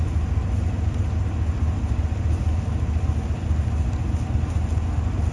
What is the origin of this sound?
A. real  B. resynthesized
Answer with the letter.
A